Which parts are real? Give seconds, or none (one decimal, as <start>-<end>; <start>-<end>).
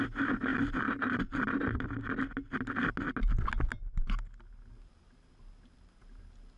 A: 0.0-6.6